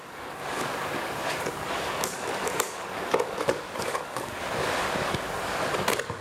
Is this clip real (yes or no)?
no